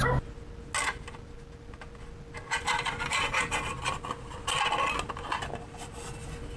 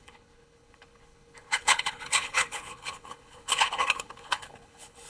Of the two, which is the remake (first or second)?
second